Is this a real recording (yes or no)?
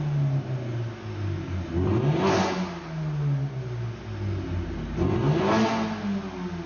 yes